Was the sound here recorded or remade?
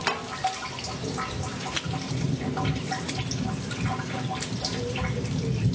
recorded